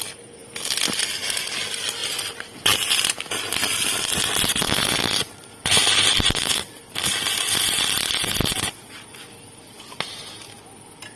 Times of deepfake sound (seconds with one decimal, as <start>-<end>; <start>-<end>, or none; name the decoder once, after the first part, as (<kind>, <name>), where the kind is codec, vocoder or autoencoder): none